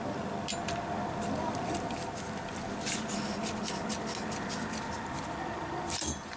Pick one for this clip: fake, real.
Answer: real